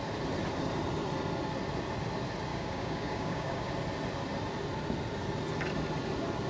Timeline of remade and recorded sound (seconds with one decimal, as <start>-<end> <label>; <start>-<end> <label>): 0.0-2.5 recorded; 2.5-3.7 remade; 3.7-6.5 recorded